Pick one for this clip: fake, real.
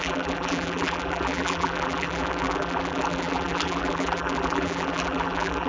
fake